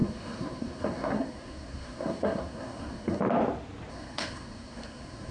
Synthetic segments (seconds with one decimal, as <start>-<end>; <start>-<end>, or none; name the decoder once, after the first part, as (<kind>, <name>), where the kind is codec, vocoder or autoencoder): 0.0-3.2 (codec, SNAC); 3.9-5.3